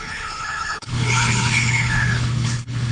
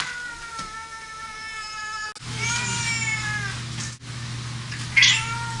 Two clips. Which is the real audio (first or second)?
second